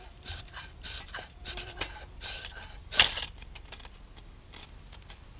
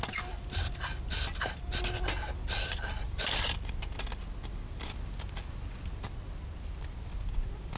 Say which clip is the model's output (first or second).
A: first